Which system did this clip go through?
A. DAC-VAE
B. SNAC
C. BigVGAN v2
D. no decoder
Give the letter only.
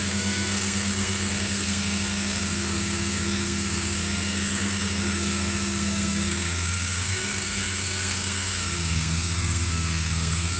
B